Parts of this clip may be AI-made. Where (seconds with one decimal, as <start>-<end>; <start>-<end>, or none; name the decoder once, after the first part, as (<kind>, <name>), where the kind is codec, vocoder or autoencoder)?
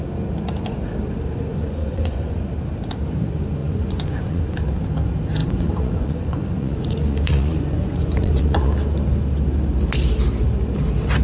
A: 1.5-2.5 (vocoder, Vocos); 3.6-4.4; 5.4-8.7